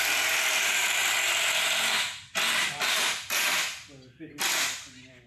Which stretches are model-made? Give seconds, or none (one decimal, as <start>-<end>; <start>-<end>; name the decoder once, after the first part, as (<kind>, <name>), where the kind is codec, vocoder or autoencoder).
0.0-1.0 (vocoder, BigVGAN v2); 2.6-3.7